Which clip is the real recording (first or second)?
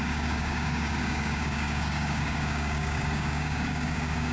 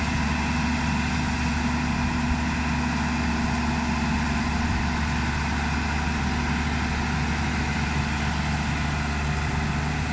second